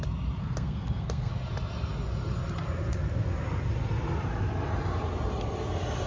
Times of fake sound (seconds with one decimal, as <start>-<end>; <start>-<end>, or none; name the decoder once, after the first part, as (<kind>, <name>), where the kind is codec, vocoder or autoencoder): 0.4-1.3 (codec, SNAC)